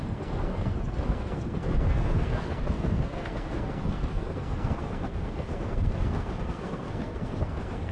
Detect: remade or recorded remade